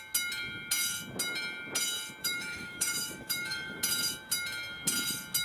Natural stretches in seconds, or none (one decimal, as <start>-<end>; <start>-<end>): 0.0-2.2; 3.8-5.4